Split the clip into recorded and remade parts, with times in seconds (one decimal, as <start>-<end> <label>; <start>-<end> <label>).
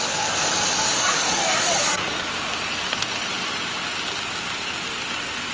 0.0-2.3 remade; 2.3-5.5 recorded